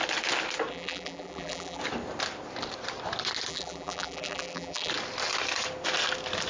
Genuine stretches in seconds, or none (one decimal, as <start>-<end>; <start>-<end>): 0.0-0.7; 1.8-3.5; 4.9-6.5

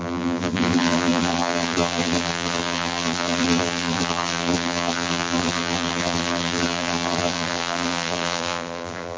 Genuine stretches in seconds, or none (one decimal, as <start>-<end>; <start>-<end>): none

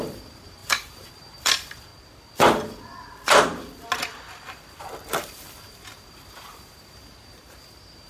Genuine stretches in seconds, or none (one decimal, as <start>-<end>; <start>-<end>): 1.9-4.8

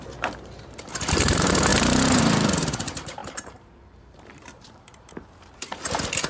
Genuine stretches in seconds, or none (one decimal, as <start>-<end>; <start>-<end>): 1.7-2.2

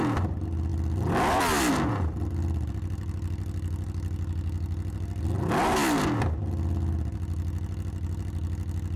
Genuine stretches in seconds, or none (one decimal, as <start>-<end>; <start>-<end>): 0.0-9.0

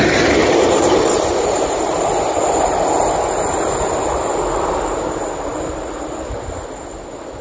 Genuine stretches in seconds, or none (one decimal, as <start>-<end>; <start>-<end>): 0.0-0.4; 2.1-7.4